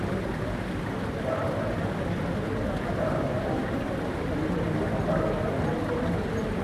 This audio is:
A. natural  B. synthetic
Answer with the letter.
A